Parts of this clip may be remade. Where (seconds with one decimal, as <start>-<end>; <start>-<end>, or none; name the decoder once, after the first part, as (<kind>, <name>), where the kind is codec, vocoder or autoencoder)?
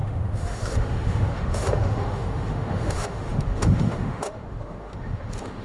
0.0-5.6 (autoencoder, DAC-VAE)